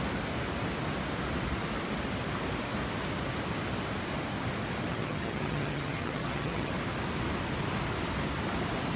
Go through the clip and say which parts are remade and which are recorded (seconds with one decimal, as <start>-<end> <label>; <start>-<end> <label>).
0.0-4.9 recorded; 4.9-6.7 remade; 6.7-9.0 recorded